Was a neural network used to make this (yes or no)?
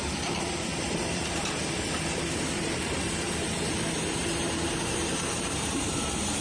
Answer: yes